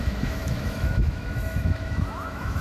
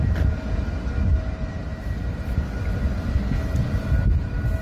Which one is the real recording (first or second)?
second